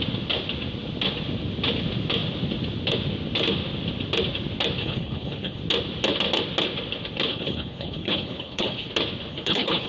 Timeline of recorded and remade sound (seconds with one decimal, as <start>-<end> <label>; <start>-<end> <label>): 0.0-4.8 recorded; 4.8-5.6 remade; 5.6-7.3 recorded; 7.3-8.9 remade; 8.9-9.3 recorded; 9.3-9.9 remade